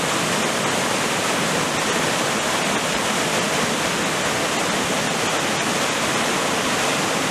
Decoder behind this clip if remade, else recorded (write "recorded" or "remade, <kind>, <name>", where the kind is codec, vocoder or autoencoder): recorded